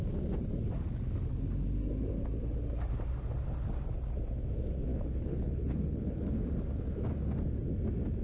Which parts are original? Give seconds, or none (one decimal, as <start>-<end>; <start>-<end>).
0.0-4.9; 6.3-8.2